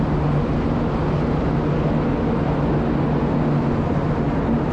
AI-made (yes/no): no